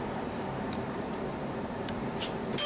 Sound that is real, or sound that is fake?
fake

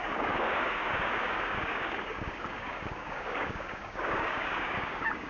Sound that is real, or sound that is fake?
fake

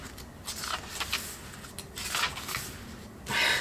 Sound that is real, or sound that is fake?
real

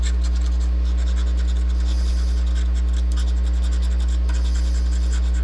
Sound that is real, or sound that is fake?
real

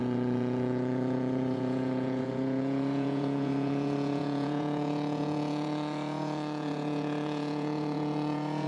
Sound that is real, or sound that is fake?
fake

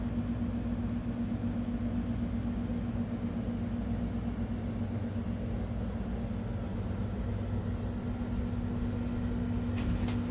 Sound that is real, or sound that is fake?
real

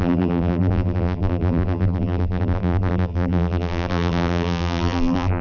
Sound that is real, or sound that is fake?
fake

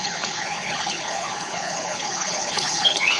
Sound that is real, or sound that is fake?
fake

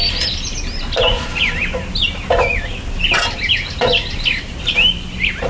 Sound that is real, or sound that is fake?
real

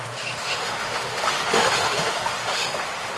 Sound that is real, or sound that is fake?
fake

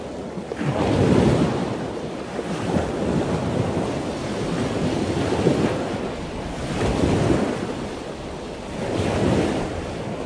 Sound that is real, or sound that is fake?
real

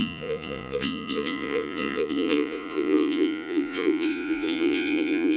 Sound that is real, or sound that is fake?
fake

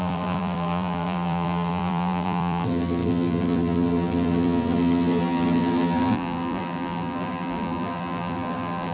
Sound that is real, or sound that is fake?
fake